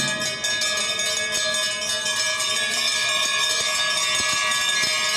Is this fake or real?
real